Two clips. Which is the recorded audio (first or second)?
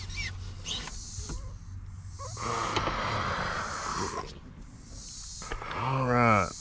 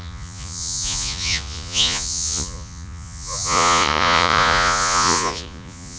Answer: first